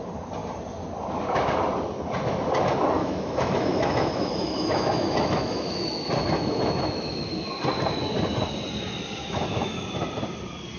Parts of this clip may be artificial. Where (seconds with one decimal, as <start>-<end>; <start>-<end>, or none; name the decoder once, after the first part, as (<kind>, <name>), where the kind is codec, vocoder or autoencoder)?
3.0-7.5 (autoencoder, DAC-VAE); 9.2-9.8